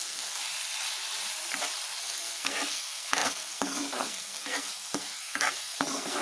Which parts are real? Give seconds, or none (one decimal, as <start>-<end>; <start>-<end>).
0.4-2.0